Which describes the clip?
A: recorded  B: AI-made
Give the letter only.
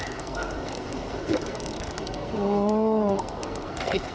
B